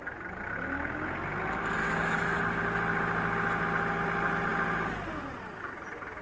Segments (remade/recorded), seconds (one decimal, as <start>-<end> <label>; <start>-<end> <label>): 0.0-1.8 recorded; 1.8-2.4 remade; 2.4-6.2 recorded